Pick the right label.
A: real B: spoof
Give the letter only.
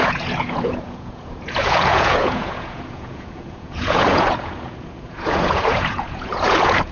B